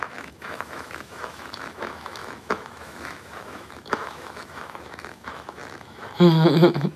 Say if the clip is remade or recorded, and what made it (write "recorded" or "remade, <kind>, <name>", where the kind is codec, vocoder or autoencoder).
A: remade, autoencoder, DAC-VAE